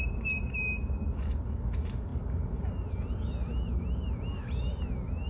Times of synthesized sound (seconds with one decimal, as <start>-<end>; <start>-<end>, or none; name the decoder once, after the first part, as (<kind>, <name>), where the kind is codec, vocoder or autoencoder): none